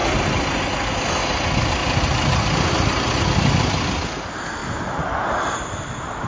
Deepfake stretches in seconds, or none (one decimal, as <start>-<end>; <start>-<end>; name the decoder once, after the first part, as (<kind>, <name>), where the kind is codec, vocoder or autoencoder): none